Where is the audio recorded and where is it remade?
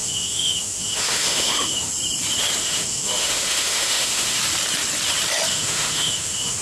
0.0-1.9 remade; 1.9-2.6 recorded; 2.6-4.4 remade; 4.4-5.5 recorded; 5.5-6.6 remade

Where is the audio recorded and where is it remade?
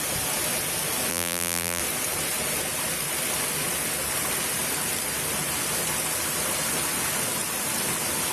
0.0-1.1 recorded; 1.1-1.8 remade; 1.8-8.3 recorded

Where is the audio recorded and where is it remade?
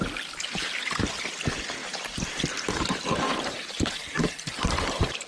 0.0-1.8 recorded; 1.8-5.3 remade